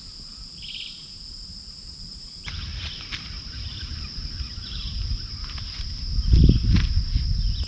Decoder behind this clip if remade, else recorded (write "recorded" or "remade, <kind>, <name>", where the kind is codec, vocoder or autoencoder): recorded